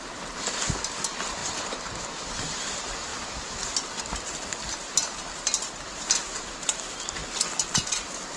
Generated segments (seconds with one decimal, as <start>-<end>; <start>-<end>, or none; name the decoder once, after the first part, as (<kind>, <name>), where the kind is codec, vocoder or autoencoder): 3.1-4.0 (vocoder, BigVGAN v2); 7.2-8.4